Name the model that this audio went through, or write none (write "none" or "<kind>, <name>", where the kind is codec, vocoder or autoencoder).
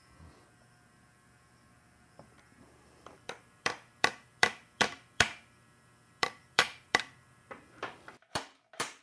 vocoder, BigVGAN v2